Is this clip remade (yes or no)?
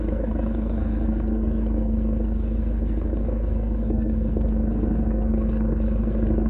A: yes